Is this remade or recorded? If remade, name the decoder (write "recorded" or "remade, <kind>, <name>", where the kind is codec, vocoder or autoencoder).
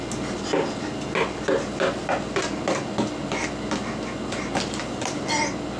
recorded